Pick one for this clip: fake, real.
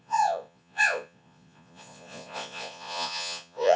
fake